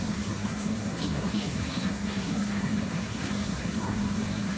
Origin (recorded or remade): remade